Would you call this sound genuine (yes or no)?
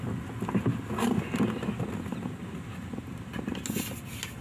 yes